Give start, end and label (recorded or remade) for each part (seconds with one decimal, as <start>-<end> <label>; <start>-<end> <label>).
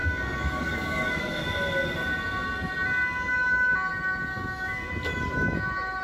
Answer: 0.0-1.5 remade; 1.5-4.3 recorded; 4.3-4.9 remade; 4.9-6.0 recorded